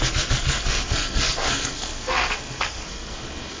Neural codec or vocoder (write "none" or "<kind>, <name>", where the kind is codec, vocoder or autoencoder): codec, SNAC